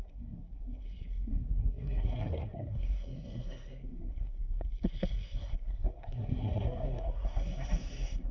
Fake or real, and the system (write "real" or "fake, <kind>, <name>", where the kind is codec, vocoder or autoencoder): fake, codec, SNAC